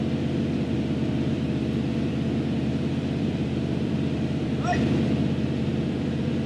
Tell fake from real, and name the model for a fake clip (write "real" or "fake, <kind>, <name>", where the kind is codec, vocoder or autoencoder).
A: fake, vocoder, BigVGAN v2